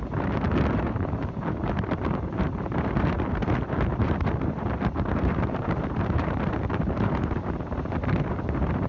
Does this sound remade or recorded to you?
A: remade